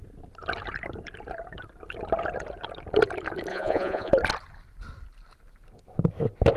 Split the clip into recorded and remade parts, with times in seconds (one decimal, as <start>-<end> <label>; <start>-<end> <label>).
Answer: 0.0-3.5 recorded; 3.5-4.1 remade; 4.1-6.6 recorded